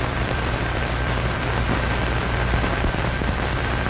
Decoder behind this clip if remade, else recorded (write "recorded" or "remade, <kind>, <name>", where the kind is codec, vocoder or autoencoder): remade, vocoder, BigVGAN v2